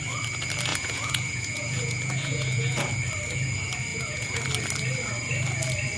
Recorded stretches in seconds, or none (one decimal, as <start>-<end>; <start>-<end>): 0.0-0.7; 2.9-3.9; 4.4-6.0